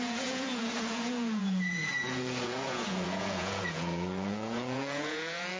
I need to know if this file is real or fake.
fake